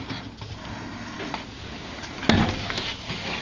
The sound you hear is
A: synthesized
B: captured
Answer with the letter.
B